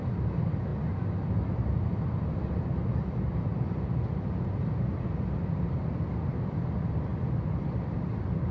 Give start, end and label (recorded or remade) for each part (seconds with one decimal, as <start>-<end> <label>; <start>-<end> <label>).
0.0-7.1 recorded; 7.1-8.0 remade; 8.0-8.5 recorded